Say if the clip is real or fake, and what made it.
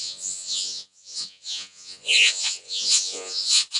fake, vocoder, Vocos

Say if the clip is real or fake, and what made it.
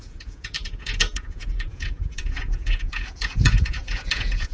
fake, vocoder, Vocos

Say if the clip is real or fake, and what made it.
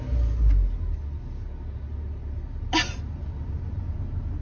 real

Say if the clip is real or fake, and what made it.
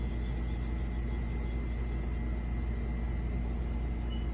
real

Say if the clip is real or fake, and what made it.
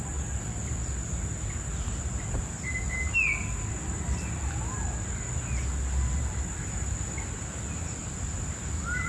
real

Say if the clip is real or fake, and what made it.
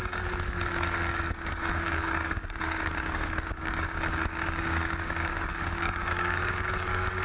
fake, codec, DAC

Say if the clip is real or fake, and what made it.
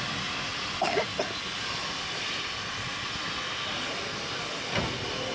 real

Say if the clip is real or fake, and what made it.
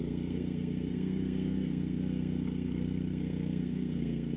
fake, codec, SNAC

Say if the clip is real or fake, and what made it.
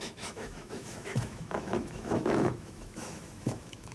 fake, autoencoder, DAC-VAE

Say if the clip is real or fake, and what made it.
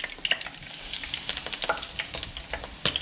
real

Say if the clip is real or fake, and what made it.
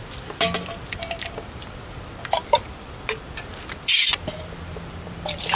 fake, vocoder, BigVGAN v2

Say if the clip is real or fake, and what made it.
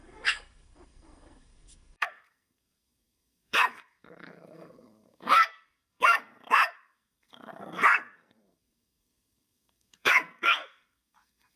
fake, codec, SNAC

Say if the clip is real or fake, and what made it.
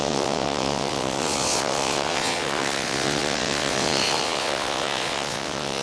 fake, vocoder, WaveNeXt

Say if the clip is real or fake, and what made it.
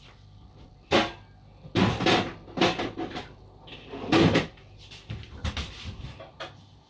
real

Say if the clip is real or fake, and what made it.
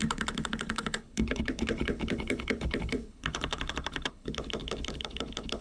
fake, codec, HILCodec